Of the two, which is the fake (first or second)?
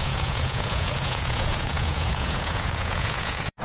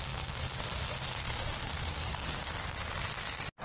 first